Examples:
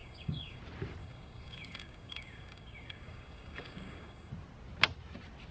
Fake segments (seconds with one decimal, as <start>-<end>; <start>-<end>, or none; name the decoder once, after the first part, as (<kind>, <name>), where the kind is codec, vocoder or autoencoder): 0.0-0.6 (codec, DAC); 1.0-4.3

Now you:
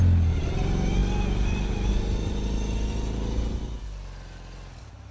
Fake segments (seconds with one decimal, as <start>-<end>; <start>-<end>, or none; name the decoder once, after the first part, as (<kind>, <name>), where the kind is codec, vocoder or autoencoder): none

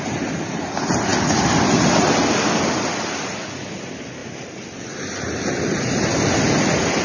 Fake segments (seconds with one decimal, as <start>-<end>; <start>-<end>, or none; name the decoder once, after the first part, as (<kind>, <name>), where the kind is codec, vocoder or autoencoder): none

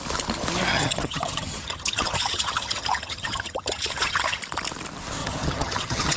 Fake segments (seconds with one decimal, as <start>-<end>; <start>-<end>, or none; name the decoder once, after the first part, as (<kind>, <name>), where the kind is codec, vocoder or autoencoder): 0.7-4.4 (vocoder, HiFi-GAN); 5.2-6.2

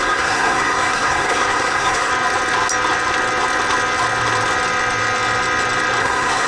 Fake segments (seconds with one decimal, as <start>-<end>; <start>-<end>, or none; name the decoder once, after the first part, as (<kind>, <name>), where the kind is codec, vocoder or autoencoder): 0.0-2.1 (codec, SNAC); 6.0-6.5

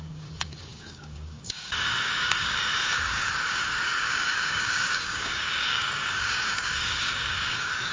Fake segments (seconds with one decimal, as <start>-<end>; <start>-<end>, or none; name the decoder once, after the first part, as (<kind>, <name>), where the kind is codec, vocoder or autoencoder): 0.0-7.9 (codec, DAC)

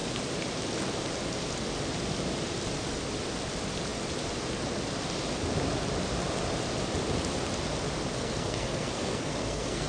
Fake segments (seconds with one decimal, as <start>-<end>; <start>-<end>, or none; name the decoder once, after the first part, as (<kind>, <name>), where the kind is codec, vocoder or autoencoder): 8.1-9.9 (codec, SNAC)

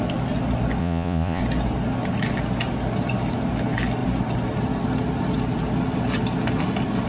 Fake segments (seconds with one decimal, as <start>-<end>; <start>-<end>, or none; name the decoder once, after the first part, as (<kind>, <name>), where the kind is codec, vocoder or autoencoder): 0.8-1.4 (vocoder, Vocos)